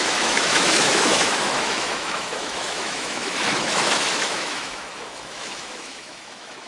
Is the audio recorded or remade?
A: remade